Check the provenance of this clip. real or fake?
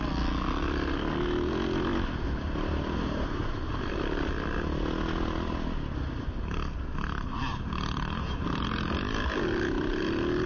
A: real